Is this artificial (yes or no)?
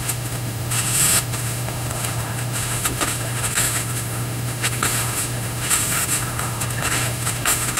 yes